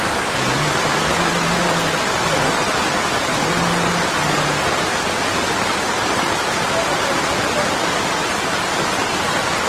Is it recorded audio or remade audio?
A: recorded